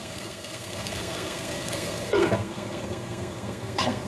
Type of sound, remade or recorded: remade